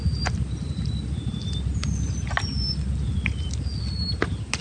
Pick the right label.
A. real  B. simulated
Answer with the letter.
A